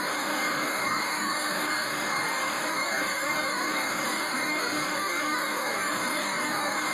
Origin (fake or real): fake